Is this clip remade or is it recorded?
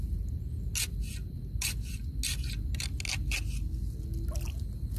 recorded